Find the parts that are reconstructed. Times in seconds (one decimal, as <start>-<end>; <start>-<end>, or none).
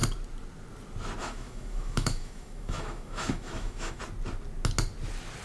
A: 1.2-4.0